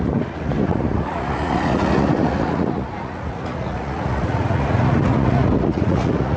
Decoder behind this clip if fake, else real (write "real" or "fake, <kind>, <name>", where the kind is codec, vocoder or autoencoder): fake, vocoder, Vocos